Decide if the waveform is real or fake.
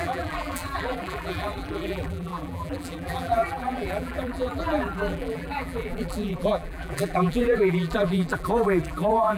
fake